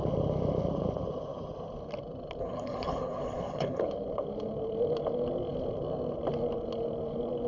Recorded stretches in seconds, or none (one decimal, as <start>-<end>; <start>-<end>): 0.0-2.4; 3.8-7.5